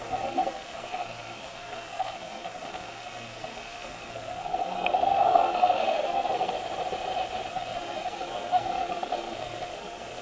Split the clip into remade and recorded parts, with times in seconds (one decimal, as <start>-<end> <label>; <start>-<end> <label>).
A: 0.0-6.5 remade; 6.5-7.5 recorded; 7.5-10.2 remade